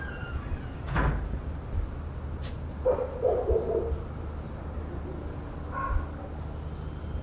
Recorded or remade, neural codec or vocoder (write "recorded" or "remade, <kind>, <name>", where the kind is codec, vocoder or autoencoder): recorded